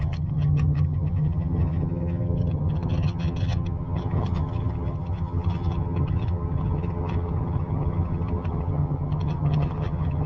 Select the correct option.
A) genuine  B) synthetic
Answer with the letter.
B